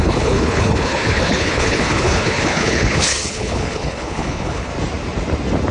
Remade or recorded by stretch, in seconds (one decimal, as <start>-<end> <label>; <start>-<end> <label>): 0.0-4.7 remade; 4.7-5.7 recorded

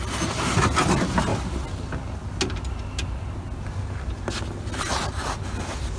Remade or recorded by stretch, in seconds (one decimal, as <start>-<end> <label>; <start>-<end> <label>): 0.0-6.0 recorded

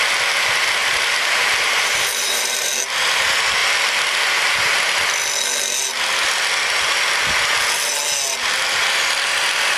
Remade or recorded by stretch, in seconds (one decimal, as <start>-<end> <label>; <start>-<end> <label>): 0.0-0.8 recorded; 0.8-2.7 remade; 2.7-9.8 recorded

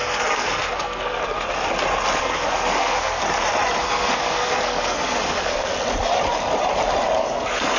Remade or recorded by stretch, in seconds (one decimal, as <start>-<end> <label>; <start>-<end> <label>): 0.0-1.2 remade; 1.2-2.2 recorded; 2.2-3.2 remade; 3.2-3.8 recorded; 3.8-5.7 remade; 5.7-7.2 recorded; 7.2-7.8 remade

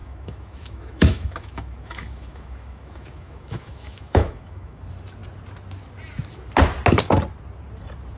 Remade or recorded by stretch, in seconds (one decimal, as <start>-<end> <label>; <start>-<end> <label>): 0.0-4.8 remade; 4.8-8.2 recorded

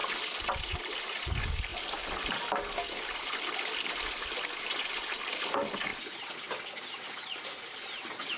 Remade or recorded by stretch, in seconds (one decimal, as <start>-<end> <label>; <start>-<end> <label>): 0.0-8.4 recorded

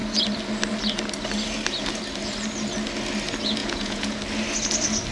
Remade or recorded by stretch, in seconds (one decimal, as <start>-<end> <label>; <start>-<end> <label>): 0.0-3.6 recorded; 3.6-4.2 remade; 4.2-5.1 recorded